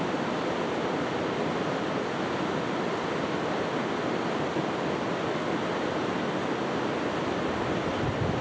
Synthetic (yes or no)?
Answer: no